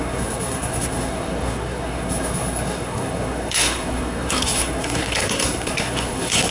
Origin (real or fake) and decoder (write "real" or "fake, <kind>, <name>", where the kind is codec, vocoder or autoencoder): fake, codec, SNAC